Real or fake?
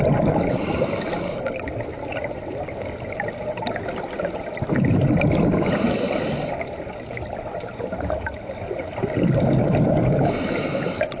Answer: real